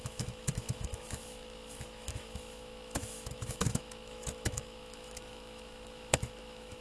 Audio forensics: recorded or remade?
remade